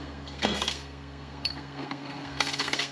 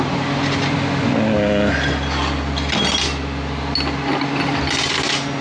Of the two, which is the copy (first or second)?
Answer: first